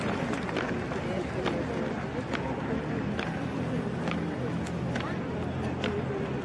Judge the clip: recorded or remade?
recorded